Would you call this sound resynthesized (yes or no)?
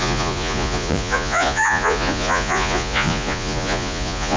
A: yes